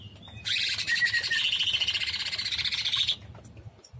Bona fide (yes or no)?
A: yes